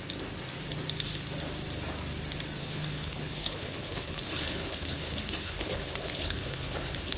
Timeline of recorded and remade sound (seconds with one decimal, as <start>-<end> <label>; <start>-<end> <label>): 0.0-2.6 recorded; 2.6-7.2 remade